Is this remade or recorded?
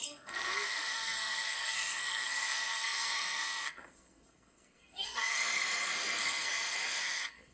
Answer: remade